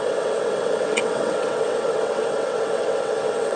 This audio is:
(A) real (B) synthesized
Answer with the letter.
B